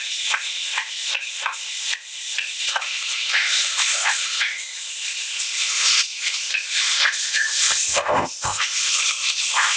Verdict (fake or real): fake